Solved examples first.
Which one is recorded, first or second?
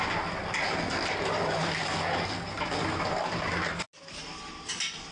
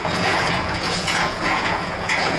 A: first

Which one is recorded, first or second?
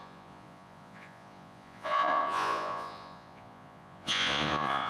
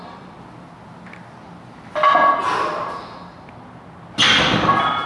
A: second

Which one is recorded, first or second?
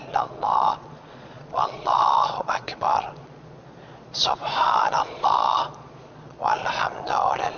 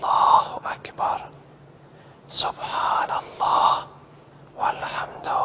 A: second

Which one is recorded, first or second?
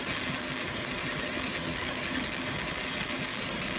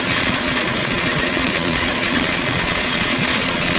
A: first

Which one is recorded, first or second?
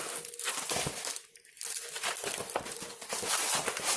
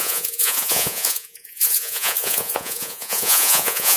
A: first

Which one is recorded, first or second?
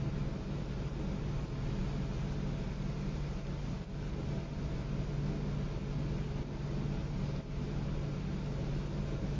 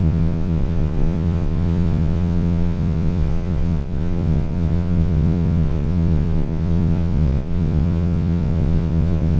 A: first